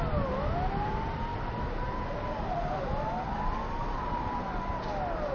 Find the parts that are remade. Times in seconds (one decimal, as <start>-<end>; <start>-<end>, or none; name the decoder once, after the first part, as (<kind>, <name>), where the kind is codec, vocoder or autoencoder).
1.3-4.5 (vocoder, BigVGAN v2)